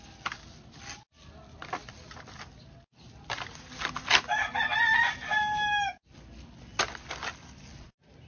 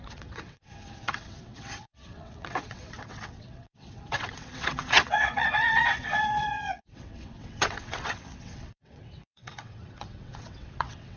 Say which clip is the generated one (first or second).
second